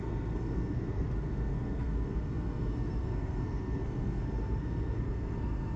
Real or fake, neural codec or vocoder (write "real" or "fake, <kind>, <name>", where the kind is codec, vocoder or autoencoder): fake, codec, SNAC